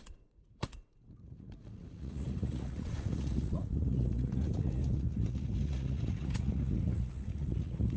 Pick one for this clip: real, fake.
fake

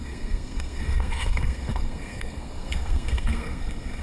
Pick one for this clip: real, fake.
fake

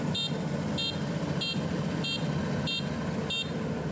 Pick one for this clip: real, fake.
real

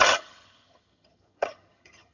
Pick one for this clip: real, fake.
fake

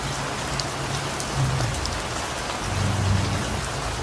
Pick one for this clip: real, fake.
real